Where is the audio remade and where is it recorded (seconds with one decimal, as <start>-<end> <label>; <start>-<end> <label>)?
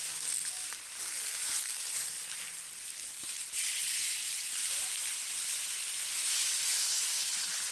0.0-6.7 recorded; 6.7-7.7 remade